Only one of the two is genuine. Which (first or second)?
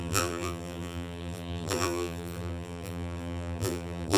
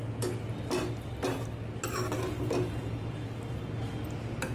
second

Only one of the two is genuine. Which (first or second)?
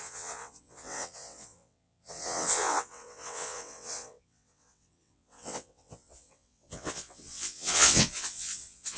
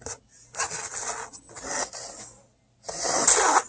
second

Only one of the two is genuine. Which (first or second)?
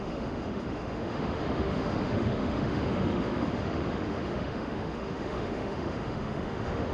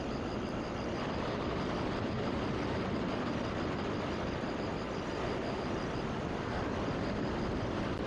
second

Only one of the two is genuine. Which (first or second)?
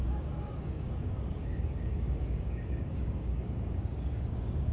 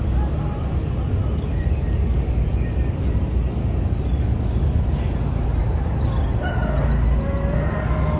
second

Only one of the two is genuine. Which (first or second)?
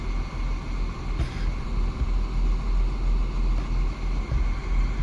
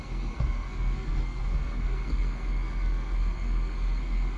first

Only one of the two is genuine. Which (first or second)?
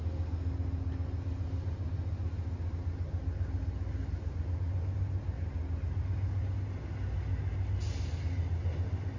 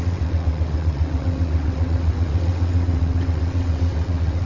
first